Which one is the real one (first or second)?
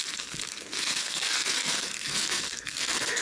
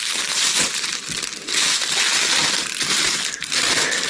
second